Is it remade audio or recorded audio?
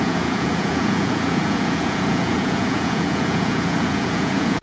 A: remade